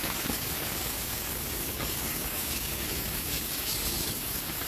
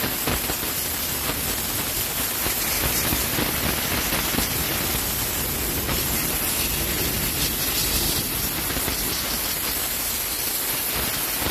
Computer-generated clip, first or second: first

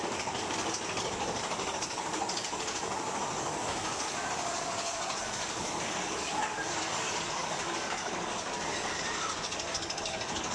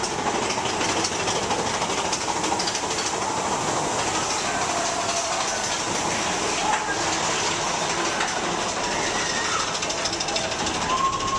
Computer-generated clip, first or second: first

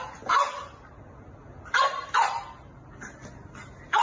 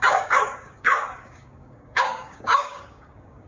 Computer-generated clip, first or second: second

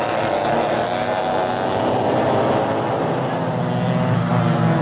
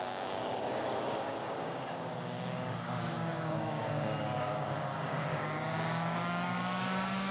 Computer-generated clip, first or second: second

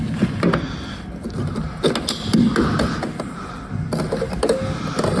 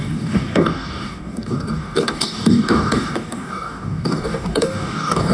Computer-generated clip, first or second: second